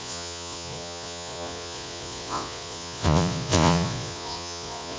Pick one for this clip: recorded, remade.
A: remade